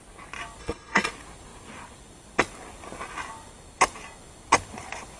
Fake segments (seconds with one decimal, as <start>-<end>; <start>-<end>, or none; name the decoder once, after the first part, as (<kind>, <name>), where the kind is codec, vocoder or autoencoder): 0.6-1.1 (codec, HILCodec)